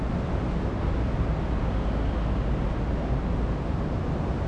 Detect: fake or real real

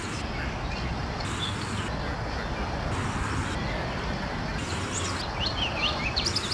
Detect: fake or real real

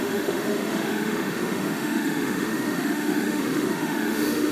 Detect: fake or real fake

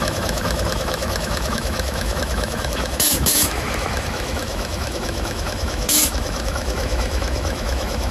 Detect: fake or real fake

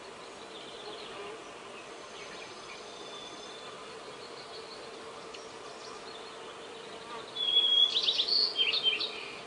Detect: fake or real real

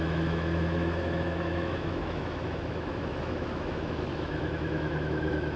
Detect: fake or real fake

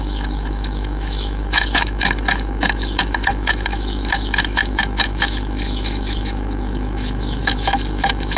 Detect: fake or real fake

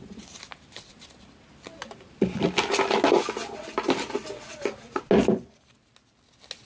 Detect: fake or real real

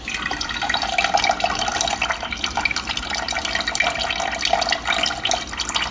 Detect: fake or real real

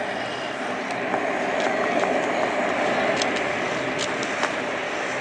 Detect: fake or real real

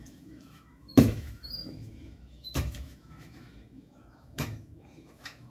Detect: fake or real fake